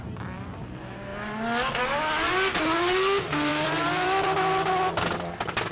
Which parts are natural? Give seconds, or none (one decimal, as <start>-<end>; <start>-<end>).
0.0-3.5; 4.7-5.7